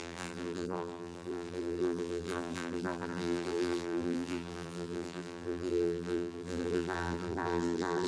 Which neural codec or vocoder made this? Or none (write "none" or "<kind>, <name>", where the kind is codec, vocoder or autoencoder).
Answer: vocoder, BigVGAN v2